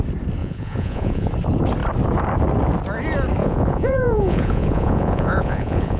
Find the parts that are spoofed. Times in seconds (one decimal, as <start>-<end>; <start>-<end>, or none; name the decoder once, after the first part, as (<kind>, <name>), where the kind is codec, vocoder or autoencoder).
0.4-1.3 (vocoder, Vocos); 3.4-6.0